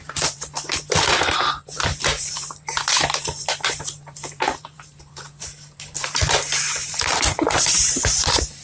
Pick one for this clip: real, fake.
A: fake